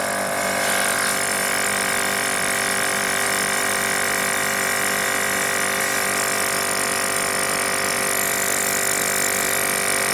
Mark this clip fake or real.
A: fake